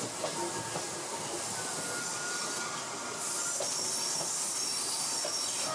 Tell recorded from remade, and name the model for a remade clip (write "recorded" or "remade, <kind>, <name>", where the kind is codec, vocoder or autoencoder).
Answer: recorded